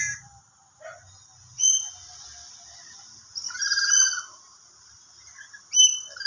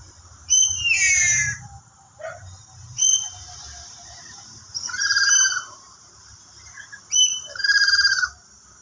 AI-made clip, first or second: second